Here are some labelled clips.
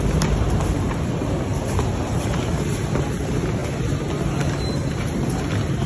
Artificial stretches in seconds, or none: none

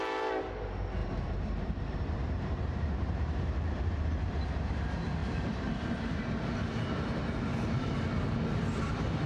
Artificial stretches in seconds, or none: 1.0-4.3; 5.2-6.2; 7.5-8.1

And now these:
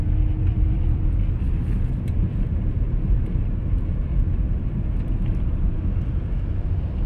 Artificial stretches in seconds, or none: 0.5-1.5; 4.1-5.8